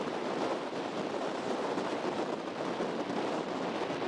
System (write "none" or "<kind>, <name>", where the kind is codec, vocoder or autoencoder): none